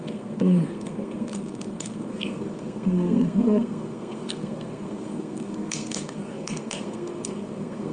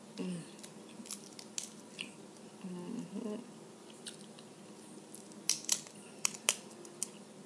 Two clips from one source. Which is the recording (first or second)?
second